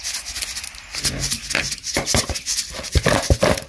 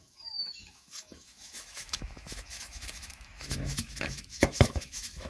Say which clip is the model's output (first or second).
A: second